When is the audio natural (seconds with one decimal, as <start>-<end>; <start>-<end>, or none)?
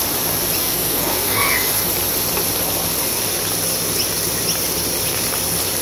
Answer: 0.0-0.6; 1.9-5.8